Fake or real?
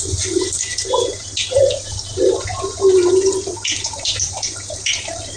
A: real